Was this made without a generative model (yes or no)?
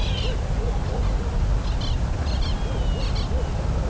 yes